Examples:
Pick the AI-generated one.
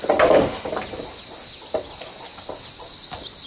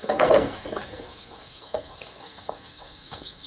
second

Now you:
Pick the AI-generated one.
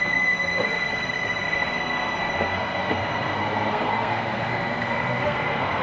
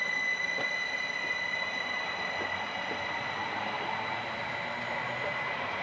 first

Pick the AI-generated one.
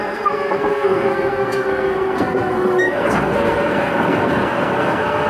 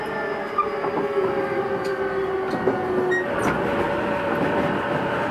first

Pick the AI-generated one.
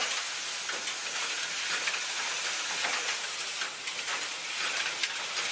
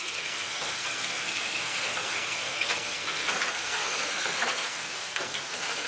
second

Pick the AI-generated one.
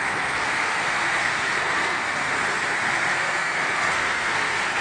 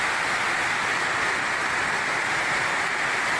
first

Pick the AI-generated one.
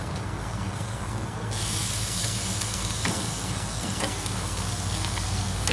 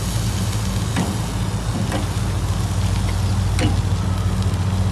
first